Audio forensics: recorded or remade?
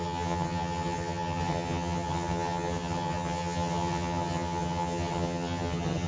remade